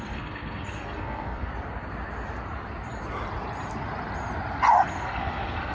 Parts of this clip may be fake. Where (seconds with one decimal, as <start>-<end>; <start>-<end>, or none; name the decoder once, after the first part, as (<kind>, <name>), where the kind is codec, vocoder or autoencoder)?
0.0-1.5 (codec, SNAC); 4.9-5.7